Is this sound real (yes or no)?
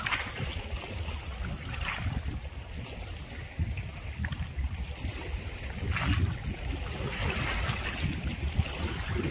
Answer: yes